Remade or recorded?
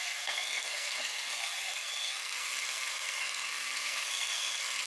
remade